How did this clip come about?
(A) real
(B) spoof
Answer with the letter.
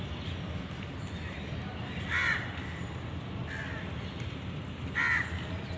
A